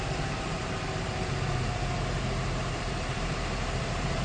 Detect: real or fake fake